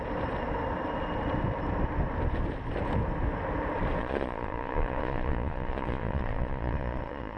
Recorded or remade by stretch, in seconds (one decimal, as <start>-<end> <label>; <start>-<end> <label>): 0.0-4.0 recorded; 4.0-7.4 remade